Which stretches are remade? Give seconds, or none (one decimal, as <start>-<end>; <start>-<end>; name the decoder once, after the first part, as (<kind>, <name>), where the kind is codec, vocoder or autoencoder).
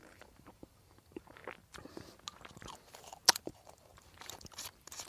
0.0-1.4 (vocoder, BigVGAN v2); 3.4-3.9